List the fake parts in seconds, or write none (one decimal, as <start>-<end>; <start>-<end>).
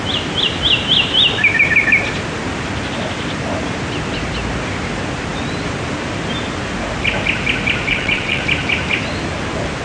7.9-8.4